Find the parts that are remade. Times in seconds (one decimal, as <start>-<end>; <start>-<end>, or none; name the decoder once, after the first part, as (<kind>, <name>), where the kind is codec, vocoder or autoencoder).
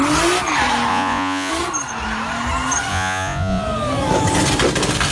0.9-1.5 (vocoder, Vocos); 2.9-3.6